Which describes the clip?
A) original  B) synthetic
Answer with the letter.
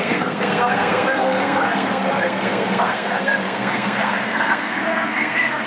B